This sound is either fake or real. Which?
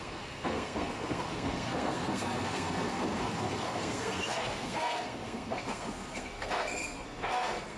fake